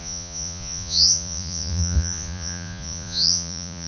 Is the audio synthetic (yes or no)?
yes